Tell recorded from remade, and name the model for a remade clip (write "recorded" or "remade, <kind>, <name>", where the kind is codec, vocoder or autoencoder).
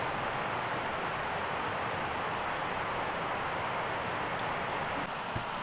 recorded